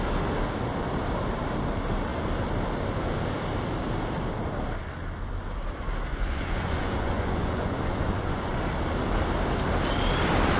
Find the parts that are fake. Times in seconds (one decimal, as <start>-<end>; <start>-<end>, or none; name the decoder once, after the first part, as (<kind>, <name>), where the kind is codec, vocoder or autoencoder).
6.1-8.6 (vocoder, Vocos)